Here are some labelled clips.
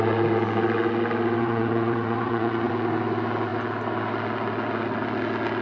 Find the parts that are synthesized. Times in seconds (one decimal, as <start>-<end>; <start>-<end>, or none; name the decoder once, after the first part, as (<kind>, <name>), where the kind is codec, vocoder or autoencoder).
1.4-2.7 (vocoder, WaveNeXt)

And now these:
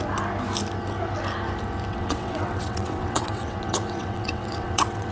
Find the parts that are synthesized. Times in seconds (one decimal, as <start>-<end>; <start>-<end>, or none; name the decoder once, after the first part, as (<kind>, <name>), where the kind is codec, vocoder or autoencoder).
1.9-5.1 (vocoder, WaveNeXt)

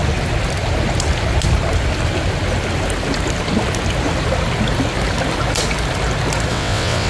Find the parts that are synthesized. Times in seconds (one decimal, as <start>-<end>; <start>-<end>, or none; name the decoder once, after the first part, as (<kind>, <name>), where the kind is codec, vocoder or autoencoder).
6.5-7.1 (vocoder, WaveNeXt)